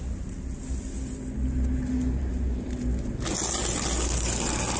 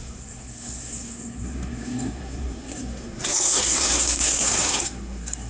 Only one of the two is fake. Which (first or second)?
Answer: second